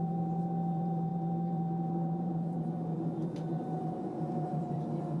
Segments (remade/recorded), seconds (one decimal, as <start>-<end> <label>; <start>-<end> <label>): 0.0-5.2 remade